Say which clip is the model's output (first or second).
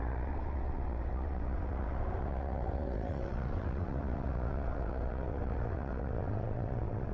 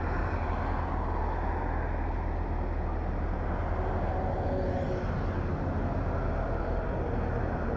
first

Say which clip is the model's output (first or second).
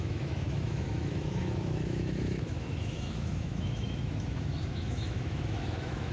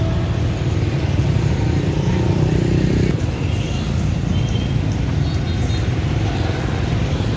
first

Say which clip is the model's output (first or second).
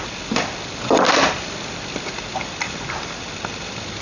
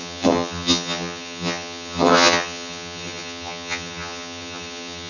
second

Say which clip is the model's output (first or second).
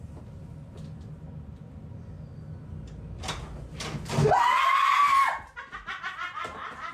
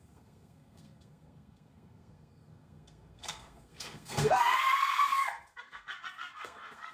second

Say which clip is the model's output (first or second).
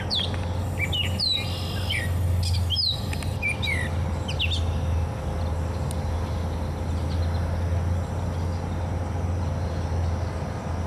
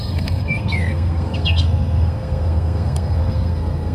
second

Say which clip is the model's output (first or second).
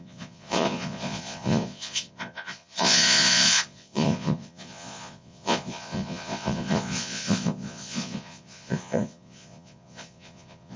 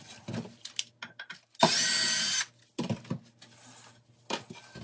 first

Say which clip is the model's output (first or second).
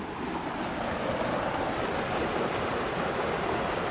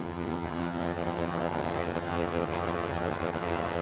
second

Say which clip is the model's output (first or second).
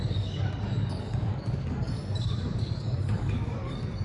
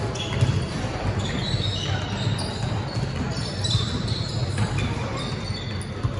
first